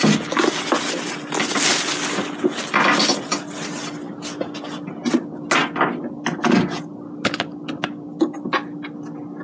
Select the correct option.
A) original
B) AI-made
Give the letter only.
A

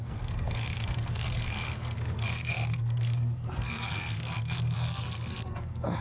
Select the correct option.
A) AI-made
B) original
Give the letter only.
A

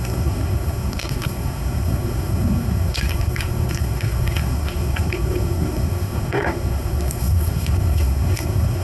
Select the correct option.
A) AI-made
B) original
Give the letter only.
A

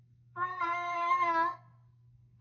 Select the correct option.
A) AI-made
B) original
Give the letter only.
A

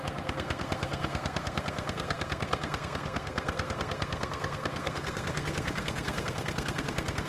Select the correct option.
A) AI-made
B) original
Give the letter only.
A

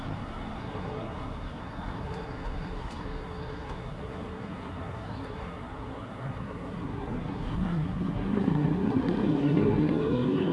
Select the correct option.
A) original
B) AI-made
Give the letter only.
B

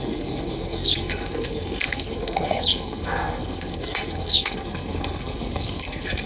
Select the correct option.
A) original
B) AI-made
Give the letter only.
B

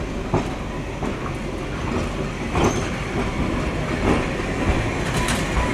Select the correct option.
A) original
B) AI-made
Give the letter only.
A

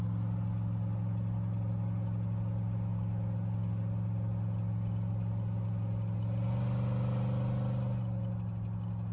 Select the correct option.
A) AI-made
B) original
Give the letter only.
B